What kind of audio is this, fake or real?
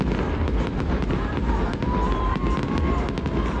real